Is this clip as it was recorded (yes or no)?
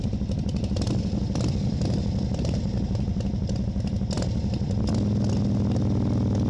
yes